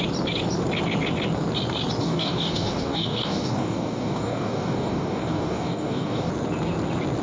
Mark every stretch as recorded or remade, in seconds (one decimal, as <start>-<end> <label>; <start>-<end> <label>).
0.0-2.0 recorded; 2.0-6.3 remade; 6.3-7.2 recorded

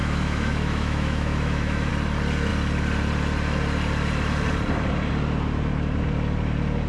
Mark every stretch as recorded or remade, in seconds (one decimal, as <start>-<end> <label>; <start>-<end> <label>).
0.0-1.9 remade; 1.9-6.9 recorded

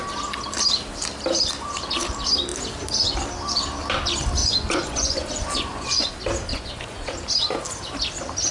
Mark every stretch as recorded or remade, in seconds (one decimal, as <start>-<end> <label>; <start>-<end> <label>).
0.0-4.4 recorded; 4.4-6.1 remade; 6.1-6.5 recorded; 6.5-7.1 remade; 7.1-8.5 recorded

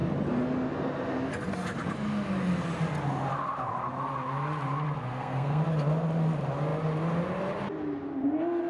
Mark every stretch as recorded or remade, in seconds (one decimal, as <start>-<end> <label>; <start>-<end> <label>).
0.0-5.1 recorded; 5.1-5.6 remade; 5.6-8.7 recorded

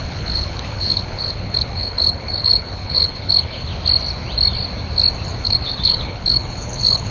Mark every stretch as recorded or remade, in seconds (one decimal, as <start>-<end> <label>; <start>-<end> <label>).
0.0-3.7 remade; 3.7-5.4 recorded; 5.4-7.1 remade

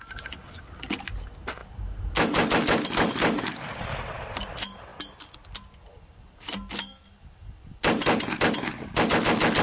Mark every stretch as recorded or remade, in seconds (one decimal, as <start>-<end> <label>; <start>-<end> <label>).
0.0-9.6 recorded

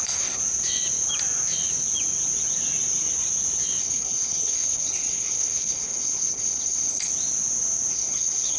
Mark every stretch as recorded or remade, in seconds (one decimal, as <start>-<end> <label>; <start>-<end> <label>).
0.0-0.4 remade; 0.4-3.8 recorded; 3.8-7.1 remade; 7.1-7.9 recorded; 7.9-8.6 remade

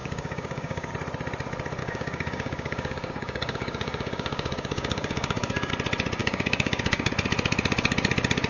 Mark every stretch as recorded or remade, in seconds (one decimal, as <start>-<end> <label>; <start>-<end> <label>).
0.0-0.9 remade; 0.9-1.8 recorded; 1.8-5.7 remade; 5.7-6.2 recorded; 6.2-7.1 remade; 7.1-8.5 recorded